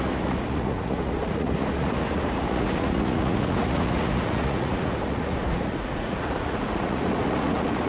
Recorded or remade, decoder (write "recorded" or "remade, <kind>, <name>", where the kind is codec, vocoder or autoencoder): remade, vocoder, Vocos